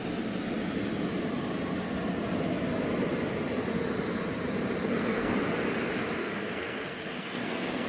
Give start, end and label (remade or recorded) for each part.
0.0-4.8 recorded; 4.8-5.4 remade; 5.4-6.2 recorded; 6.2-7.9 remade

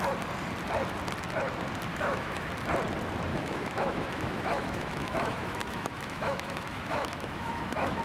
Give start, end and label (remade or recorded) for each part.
0.0-1.9 recorded; 1.9-2.5 remade; 2.5-3.3 recorded; 3.3-8.0 remade